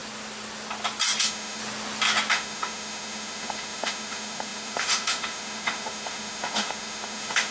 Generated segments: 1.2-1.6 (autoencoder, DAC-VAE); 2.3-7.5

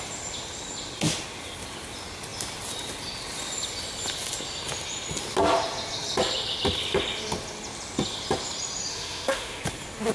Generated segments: 8.9-9.6 (autoencoder, DAC-VAE)

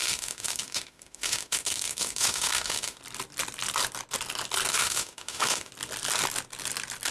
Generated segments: 0.0-3.0 (autoencoder, DAC-VAE); 4.7-5.7

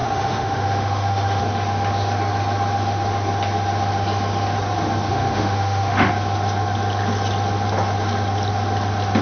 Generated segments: 0.0-1.4 (autoencoder, DAC-VAE); 5.1-6.1

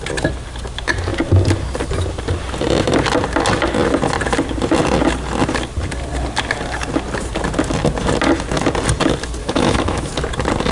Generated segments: 9.4-10.1 (autoencoder, DAC-VAE)

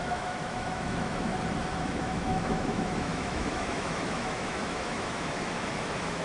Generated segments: 0.0-1.3 (autoencoder, DAC-VAE); 1.8-6.2

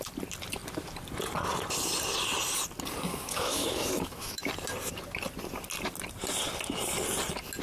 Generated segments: 3.1-4.4 (autoencoder, DAC-VAE)

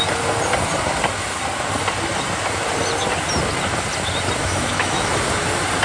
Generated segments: 4.4-5.1 (autoencoder, DAC-VAE)